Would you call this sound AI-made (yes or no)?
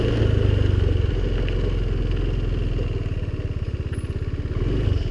no